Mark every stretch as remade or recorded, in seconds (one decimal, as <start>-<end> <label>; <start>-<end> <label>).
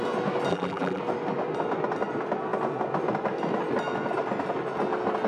0.0-0.5 recorded; 0.5-1.0 remade; 1.0-5.3 recorded